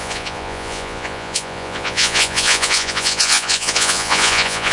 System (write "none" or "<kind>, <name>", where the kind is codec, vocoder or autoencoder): vocoder, Vocos